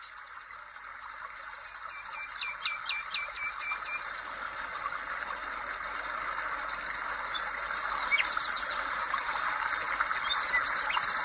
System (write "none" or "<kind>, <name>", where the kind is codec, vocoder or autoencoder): none